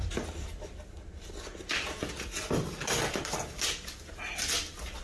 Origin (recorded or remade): recorded